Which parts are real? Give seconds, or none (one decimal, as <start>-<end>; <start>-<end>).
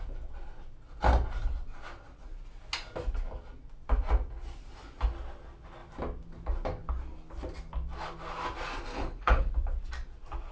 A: 0.0-8.9; 9.5-10.5